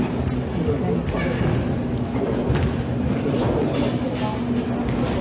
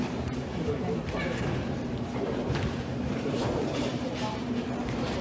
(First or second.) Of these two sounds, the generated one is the second